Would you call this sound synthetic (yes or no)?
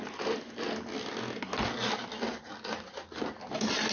no